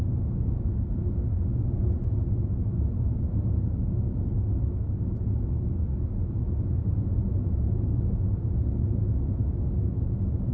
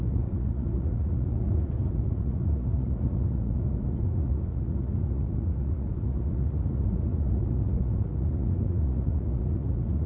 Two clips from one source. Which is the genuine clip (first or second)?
first